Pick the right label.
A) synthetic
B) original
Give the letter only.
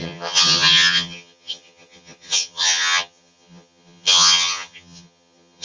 A